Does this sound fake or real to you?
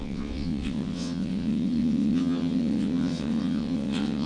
fake